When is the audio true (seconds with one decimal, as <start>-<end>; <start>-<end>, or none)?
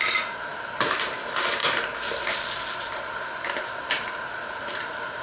0.0-5.2